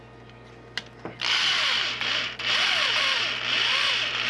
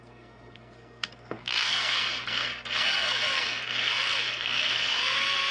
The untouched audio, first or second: first